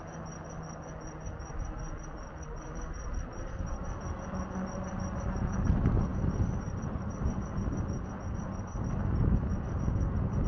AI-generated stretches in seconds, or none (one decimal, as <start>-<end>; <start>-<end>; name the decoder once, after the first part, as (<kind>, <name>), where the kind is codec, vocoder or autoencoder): none